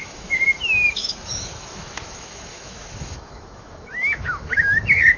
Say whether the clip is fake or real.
fake